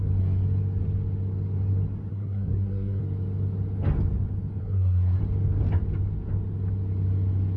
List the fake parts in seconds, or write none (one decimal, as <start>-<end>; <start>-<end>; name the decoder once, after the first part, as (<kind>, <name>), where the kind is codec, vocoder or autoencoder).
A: 2.1-3.0 (codec, SNAC); 4.6-5.2